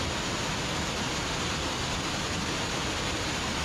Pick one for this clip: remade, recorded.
recorded